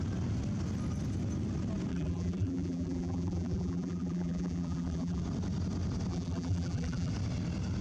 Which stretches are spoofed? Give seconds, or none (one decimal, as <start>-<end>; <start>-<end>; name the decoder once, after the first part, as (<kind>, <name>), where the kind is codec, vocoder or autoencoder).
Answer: 1.9-5.2 (vocoder, BigVGAN v2); 6.1-7.1